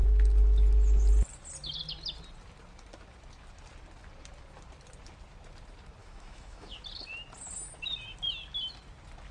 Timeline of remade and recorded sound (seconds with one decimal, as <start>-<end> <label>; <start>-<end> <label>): 0.0-6.0 recorded; 6.0-6.8 remade; 6.8-9.3 recorded